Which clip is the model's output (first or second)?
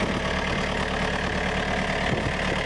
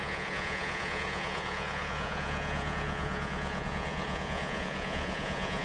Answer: second